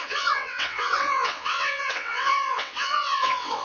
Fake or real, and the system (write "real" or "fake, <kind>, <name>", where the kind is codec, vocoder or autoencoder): fake, vocoder, WaveNeXt